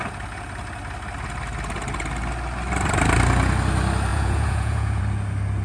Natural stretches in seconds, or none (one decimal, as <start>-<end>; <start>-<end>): 0.0-4.1; 5.0-5.6

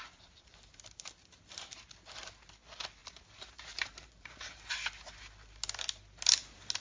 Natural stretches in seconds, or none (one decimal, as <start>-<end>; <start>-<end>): 0.0-3.0; 4.7-6.8

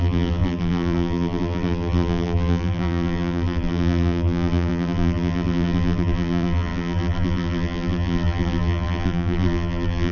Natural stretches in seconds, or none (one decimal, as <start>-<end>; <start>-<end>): none

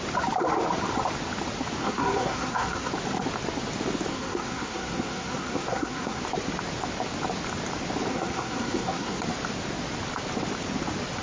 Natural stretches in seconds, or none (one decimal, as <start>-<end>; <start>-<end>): 0.0-1.8; 2.9-4.1; 6.2-8.1; 9.2-11.2